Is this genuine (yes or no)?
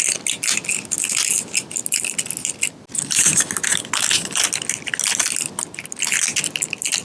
yes